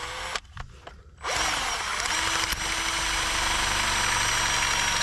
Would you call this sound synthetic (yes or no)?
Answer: no